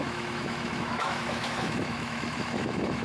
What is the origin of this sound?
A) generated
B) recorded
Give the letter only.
A